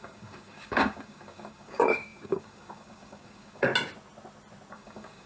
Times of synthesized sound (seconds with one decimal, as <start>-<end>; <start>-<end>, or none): 0.0-3.7; 4.7-5.3